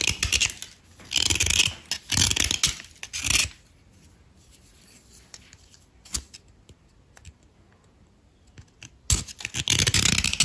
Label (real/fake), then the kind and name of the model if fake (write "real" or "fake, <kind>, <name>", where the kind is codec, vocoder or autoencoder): real